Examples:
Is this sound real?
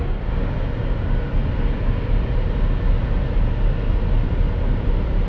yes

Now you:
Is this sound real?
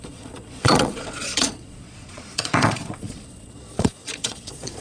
no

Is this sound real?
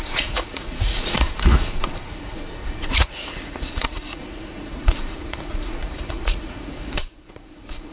no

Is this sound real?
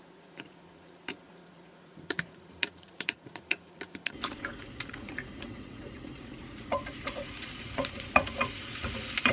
no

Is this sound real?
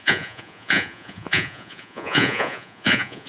no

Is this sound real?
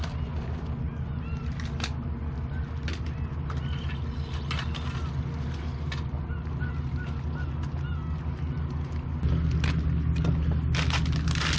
yes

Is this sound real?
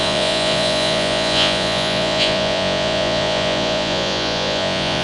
no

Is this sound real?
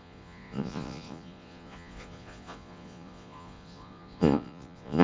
no